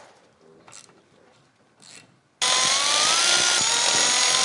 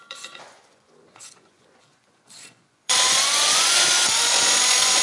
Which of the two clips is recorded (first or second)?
first